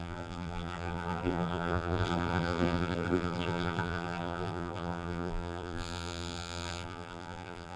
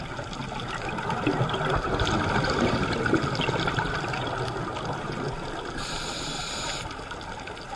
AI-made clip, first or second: first